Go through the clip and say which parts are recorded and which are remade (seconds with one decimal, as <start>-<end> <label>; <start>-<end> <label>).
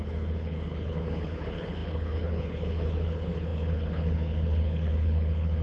0.0-5.6 remade